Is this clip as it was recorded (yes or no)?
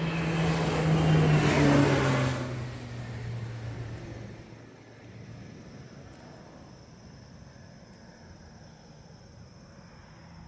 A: yes